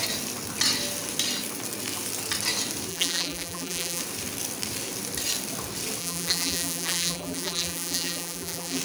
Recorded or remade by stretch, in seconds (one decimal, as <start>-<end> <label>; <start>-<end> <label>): 0.0-2.9 recorded; 2.9-4.0 remade; 4.0-6.0 recorded; 6.0-8.8 remade